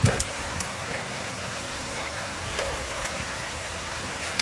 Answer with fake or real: fake